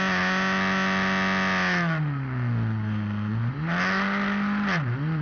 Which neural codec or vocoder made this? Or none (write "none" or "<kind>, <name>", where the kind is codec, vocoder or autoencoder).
none